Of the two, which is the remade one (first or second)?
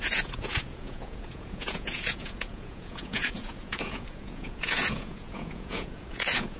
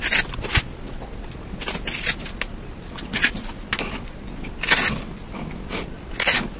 first